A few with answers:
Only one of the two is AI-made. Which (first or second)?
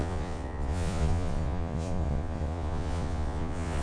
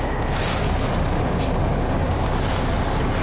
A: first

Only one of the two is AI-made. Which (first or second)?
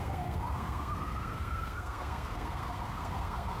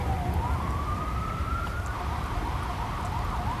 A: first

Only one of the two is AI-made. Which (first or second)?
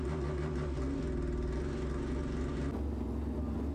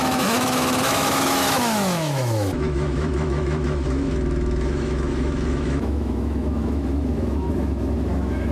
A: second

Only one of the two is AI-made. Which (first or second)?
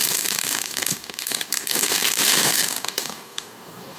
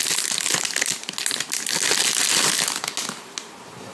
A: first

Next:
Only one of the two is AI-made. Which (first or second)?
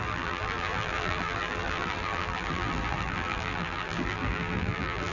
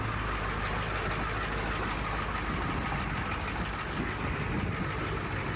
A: first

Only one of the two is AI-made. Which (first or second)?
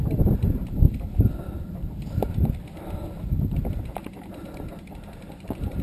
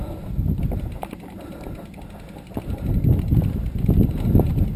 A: first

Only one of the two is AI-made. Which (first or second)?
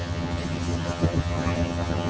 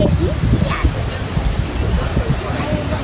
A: first